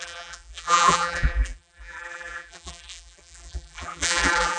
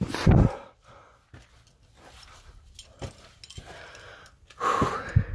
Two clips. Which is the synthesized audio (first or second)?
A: first